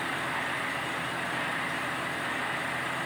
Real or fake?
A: real